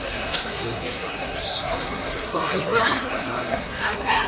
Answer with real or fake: fake